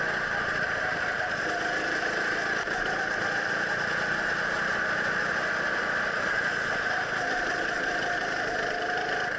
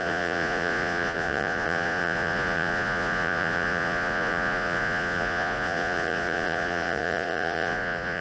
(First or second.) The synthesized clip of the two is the second